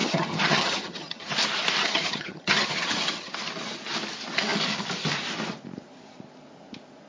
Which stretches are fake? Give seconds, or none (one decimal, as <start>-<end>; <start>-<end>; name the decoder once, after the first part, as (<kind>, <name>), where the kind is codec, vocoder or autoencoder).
0.0-1.3 (vocoder, HiFi-GAN); 1.8-3.3